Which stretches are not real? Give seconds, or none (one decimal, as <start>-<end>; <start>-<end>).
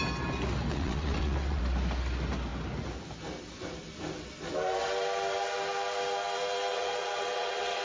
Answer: 0.7-1.6; 6.7-7.8